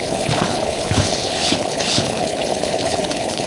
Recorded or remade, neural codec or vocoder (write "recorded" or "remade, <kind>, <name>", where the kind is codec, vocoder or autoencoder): remade, codec, HILCodec